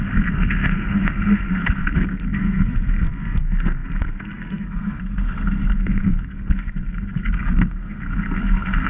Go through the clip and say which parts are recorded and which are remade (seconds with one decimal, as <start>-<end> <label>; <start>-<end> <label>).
0.0-8.9 remade